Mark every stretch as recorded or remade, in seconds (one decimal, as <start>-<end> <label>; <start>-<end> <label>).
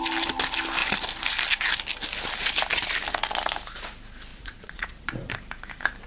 0.0-4.3 recorded; 4.3-5.3 remade; 5.3-6.1 recorded